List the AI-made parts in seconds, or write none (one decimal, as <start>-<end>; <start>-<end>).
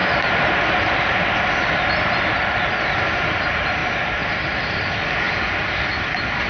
0.0-1.3; 3.8-4.8